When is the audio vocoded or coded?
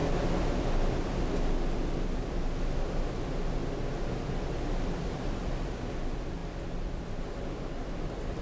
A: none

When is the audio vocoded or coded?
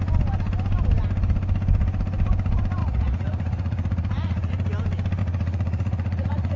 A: 2.8-4.5 (vocoder, Vocos); 5.2-6.6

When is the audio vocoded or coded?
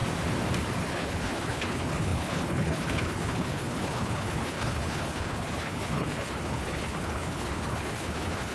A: 0.8-8.5 (codec, HILCodec)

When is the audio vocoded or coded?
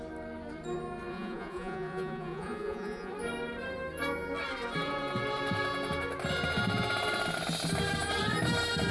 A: 1.1-3.1 (vocoder, Vocos)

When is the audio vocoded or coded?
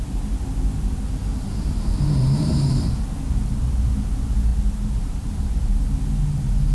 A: 1.3-3.6 (vocoder, BigVGAN v2); 4.5-5.9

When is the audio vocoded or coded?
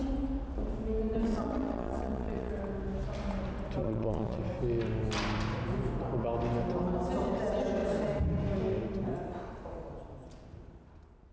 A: 1.3-2.5 (vocoder, Vocos); 3.8-4.4